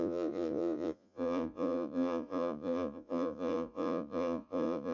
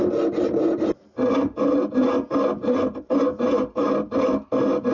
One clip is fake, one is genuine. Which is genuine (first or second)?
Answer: second